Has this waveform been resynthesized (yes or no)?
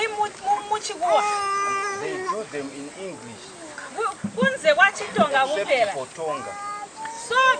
no